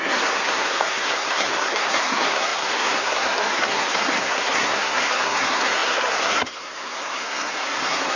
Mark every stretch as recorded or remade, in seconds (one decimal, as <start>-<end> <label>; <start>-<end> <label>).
0.0-8.2 remade